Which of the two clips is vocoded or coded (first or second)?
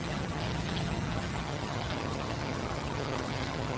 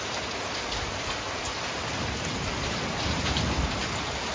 first